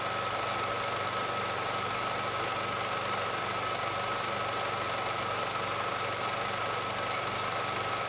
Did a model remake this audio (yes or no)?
no